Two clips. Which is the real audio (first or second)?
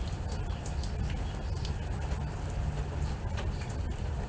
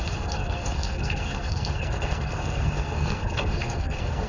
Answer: first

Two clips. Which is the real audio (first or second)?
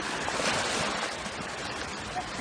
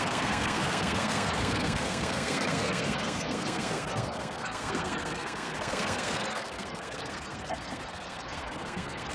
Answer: first